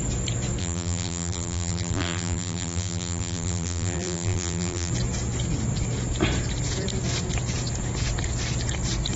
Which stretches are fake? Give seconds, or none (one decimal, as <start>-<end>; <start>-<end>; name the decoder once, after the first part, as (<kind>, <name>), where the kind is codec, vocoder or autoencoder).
0.6-4.9 (vocoder, BigVGAN v2)